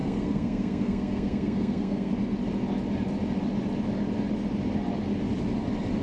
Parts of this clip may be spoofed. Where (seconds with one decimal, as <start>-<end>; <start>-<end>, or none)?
0.0-2.1

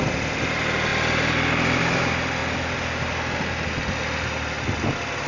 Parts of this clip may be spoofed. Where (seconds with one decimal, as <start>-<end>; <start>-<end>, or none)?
none